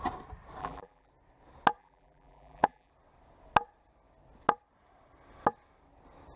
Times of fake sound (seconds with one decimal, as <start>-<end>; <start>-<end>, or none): 0.6-1.1; 1.8-2.9